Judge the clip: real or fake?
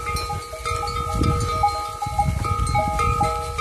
real